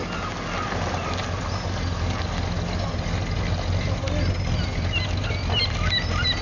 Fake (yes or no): no